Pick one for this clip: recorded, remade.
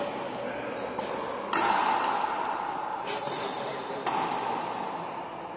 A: recorded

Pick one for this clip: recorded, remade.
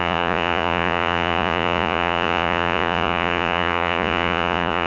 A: remade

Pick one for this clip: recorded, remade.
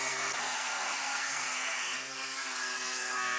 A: remade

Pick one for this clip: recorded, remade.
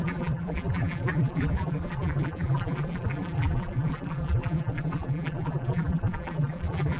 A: remade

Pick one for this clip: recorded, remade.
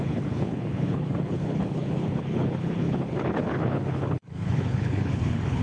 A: remade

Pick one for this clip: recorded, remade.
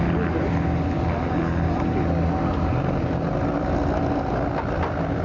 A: recorded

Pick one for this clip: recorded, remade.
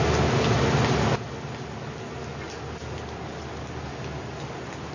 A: recorded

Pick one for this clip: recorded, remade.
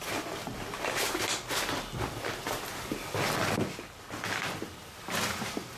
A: recorded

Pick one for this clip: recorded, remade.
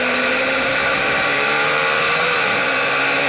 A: remade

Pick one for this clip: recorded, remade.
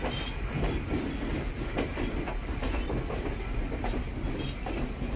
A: recorded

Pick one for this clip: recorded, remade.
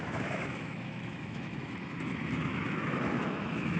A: remade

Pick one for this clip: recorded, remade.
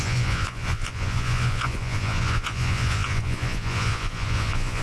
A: remade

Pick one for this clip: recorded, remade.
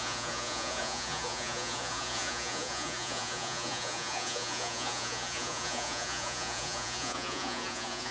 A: remade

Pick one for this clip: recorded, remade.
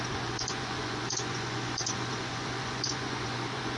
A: remade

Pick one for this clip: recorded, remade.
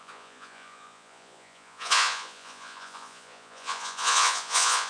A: remade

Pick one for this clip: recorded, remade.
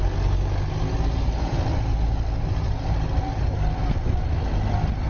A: recorded